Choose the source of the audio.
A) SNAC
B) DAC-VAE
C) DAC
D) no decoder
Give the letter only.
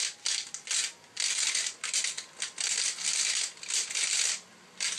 D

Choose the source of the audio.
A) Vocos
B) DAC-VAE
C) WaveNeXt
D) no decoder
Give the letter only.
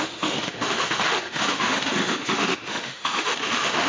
B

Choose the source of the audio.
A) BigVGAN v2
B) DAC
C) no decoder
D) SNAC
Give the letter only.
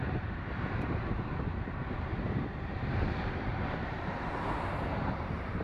A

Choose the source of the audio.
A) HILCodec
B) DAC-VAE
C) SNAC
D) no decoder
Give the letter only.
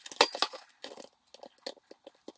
D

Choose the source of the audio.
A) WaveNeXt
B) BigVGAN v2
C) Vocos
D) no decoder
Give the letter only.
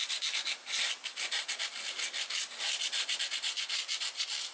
D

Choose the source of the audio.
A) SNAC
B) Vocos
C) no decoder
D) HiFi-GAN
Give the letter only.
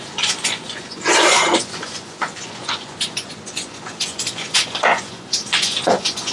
B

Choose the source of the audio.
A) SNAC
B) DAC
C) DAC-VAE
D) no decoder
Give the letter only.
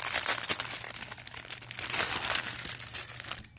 D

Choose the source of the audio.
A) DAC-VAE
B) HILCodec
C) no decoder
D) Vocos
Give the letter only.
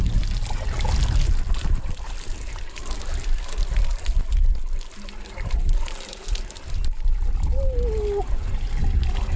C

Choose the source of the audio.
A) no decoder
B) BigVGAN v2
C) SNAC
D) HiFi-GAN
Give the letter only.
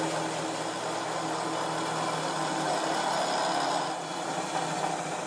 A